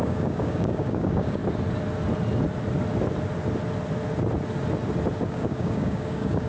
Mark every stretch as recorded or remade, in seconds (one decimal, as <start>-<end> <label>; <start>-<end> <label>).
0.0-1.4 remade; 1.4-5.3 recorded; 5.3-6.5 remade